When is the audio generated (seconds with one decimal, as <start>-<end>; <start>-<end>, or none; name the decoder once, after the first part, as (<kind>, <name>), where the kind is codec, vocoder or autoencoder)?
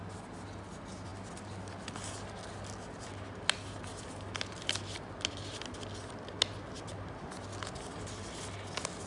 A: none